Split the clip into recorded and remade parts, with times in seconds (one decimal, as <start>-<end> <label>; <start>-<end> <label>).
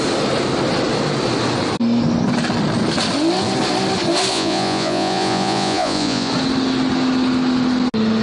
0.0-4.3 recorded; 4.3-6.3 remade; 6.3-8.2 recorded